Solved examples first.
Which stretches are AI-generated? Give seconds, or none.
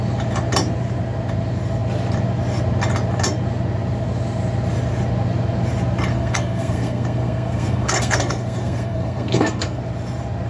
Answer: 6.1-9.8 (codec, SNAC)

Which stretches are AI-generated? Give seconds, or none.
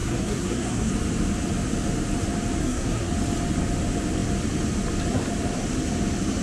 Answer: 0.0-0.9 (codec, SNAC); 2.6-3.1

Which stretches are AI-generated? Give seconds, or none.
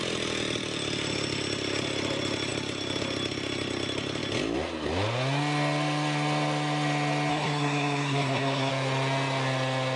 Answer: 7.3-8.7 (codec, SNAC)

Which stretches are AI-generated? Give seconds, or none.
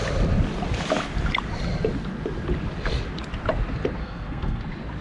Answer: 4.0-4.6 (codec, SNAC)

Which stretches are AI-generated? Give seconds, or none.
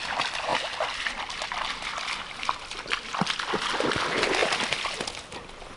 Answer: none